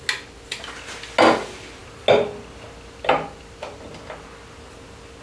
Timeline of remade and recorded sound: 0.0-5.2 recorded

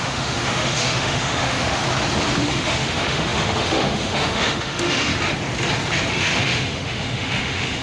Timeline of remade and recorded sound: 0.0-1.8 remade; 1.8-2.5 recorded; 2.5-5.1 remade; 5.1-6.1 recorded; 6.1-7.8 remade